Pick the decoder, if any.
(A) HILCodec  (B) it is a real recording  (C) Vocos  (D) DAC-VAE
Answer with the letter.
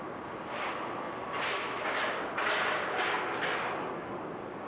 B